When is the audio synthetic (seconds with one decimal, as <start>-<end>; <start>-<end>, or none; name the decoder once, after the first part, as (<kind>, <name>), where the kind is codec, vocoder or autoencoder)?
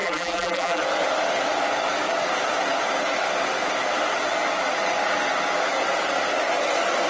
0.0-0.8 (vocoder, BigVGAN v2)